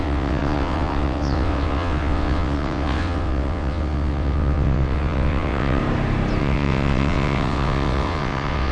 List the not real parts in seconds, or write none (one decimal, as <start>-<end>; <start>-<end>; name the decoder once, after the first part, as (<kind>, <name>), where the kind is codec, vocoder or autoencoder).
0.0-5.8 (vocoder, WaveNeXt); 6.4-8.7